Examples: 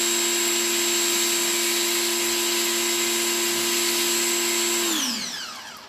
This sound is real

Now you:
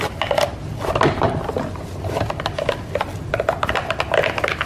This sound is real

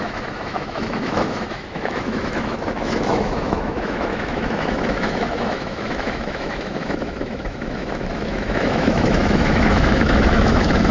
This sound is fake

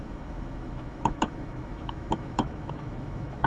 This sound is fake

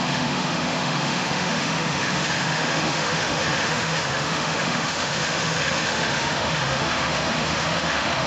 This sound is fake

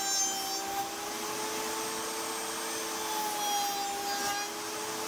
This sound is real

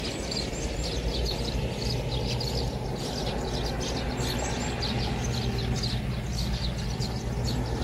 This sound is real